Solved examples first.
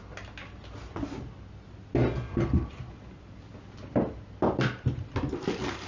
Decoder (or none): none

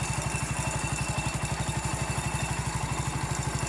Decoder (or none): vocoder, BigVGAN v2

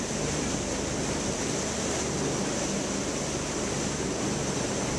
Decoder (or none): none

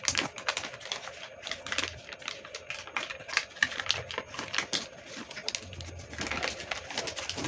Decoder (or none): none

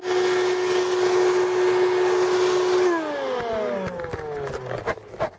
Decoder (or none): none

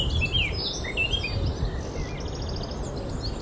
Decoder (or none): none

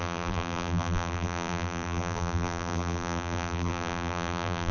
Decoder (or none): vocoder, BigVGAN v2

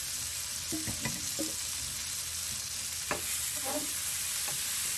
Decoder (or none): none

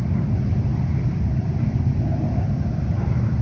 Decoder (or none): none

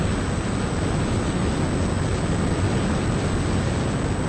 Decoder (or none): none